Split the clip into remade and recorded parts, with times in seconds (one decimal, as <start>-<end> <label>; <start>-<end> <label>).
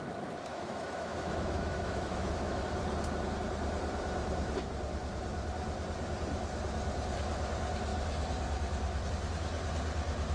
0.0-0.5 recorded; 0.5-2.6 remade; 2.6-10.3 recorded